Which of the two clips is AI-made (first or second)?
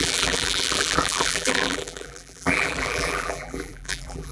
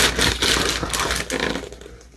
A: first